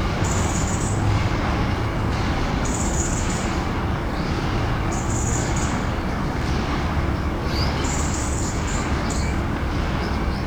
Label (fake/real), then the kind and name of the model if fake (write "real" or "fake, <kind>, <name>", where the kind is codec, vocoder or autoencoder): fake, codec, DAC